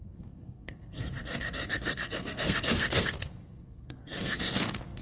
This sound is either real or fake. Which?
fake